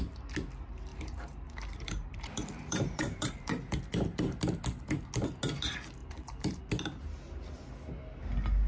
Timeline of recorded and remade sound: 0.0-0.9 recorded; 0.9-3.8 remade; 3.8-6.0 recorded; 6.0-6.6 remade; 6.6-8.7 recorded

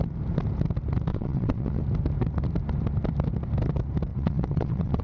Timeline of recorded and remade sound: 0.0-1.1 recorded; 1.1-1.8 remade; 1.8-4.1 recorded; 4.1-5.0 remade